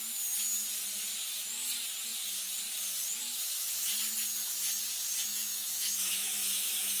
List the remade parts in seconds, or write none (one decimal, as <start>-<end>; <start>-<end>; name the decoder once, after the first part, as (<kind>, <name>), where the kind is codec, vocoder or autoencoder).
5.3-7.0 (autoencoder, DAC-VAE)